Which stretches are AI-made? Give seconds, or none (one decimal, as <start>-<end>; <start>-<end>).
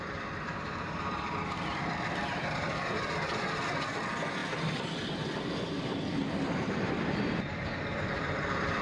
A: none